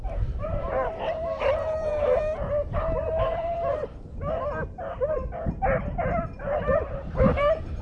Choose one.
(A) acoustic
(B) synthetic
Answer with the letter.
B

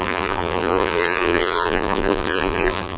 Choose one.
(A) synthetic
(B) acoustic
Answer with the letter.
A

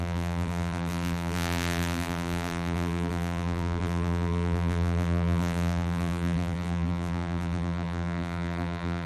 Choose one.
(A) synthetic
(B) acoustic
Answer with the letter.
A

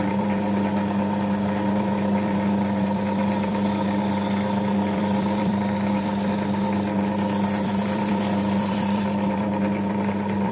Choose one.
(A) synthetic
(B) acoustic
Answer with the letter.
A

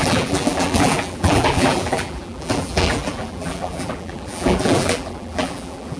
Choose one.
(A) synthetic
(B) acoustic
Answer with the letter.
A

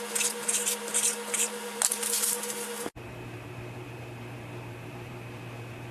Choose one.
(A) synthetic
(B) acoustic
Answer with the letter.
A